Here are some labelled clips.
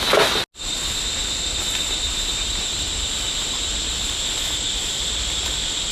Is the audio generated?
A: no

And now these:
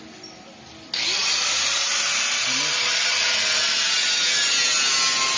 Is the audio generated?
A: no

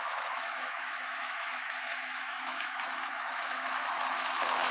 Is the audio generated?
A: yes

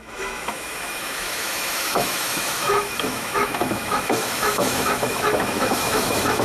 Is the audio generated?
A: yes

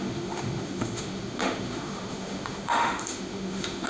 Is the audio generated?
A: yes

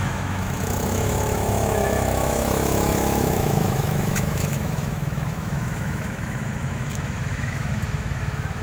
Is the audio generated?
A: yes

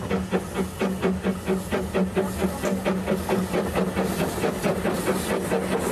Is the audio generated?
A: no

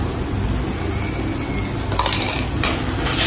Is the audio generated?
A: no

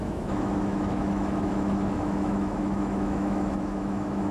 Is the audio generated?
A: yes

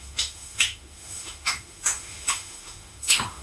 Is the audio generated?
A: yes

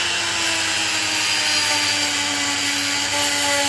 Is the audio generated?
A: no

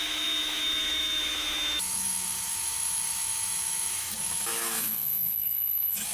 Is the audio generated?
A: yes